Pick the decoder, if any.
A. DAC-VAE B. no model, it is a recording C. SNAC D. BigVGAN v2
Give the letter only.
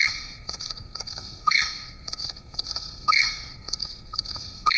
C